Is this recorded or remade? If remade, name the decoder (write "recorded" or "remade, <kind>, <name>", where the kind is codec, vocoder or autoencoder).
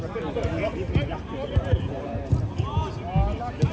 recorded